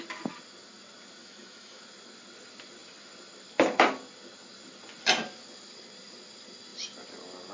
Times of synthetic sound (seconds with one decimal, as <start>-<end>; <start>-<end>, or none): 1.2-1.8

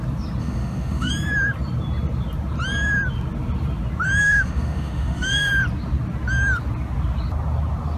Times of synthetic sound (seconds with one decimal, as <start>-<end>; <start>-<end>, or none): 0.4-1.1; 4.2-5.5